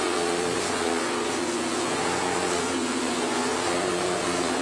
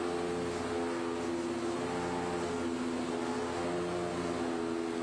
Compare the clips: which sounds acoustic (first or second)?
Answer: second